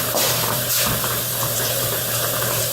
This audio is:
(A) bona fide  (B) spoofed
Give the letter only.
B